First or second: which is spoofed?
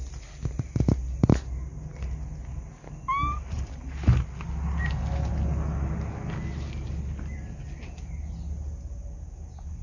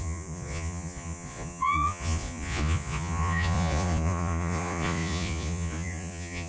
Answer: second